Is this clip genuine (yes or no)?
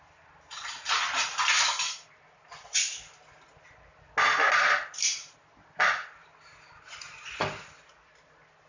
yes